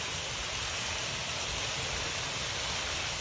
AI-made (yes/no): no